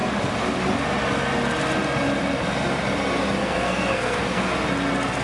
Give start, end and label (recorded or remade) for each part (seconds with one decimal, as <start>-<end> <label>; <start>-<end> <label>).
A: 0.0-3.4 recorded; 3.4-4.5 remade; 4.5-5.2 recorded